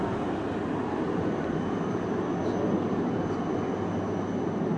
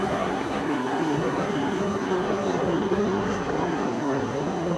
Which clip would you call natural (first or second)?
first